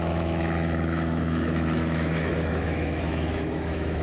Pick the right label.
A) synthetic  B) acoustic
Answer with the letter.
A